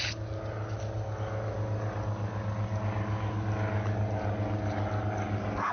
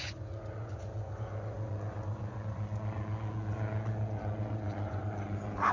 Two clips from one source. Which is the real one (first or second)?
first